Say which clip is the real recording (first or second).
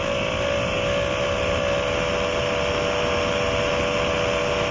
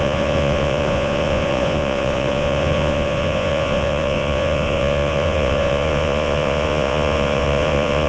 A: first